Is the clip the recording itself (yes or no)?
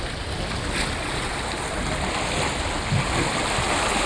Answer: yes